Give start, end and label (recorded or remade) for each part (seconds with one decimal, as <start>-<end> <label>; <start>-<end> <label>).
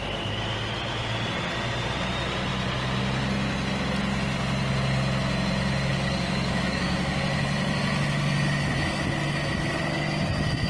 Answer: 0.0-5.9 recorded; 5.9-7.2 remade; 7.2-10.7 recorded